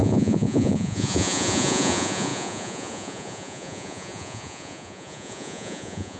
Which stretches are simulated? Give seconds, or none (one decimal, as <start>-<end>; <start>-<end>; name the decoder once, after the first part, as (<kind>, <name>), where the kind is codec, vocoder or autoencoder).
0.0-6.2 (vocoder, Vocos)